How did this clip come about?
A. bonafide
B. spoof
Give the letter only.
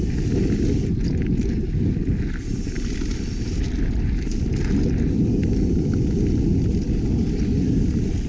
A